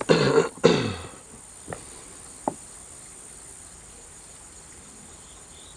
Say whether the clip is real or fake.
real